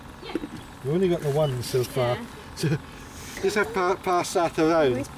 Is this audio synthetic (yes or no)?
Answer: no